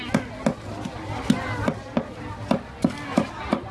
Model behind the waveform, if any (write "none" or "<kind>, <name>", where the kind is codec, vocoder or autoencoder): none